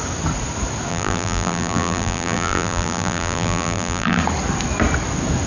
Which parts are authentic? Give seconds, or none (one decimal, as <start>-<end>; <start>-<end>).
0.0-0.9; 4.2-5.5